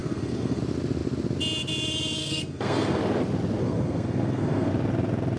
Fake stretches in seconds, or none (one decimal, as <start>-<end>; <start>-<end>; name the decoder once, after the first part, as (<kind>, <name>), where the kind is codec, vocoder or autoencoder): 0.0-0.6 (codec, SNAC); 2.2-3.0; 3.6-4.7